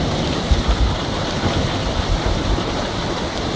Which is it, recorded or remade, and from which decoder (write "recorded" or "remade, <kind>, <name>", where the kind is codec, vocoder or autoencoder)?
remade, vocoder, BigVGAN v2